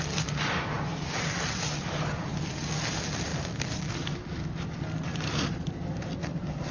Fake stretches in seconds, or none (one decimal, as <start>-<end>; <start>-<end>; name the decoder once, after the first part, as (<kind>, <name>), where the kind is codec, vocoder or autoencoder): none